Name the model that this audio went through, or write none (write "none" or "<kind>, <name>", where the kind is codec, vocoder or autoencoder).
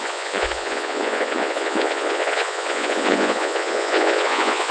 vocoder, Vocos